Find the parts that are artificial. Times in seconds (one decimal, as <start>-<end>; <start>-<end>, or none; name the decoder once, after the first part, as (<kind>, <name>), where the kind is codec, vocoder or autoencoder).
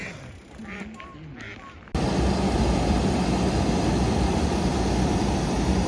none